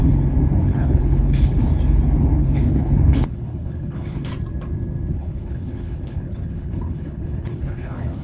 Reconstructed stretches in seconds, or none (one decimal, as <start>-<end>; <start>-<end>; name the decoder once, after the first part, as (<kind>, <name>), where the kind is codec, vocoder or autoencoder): 0.6-1.7 (codec, HILCodec); 2.4-4.3; 5.1-8.2

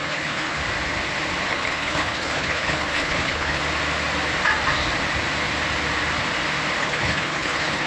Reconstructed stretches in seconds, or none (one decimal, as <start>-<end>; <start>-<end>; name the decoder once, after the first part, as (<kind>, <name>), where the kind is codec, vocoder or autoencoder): 0.0-0.6 (codec, HILCodec); 1.4-3.6; 6.8-7.9